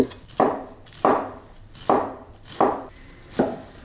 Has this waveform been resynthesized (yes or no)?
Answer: no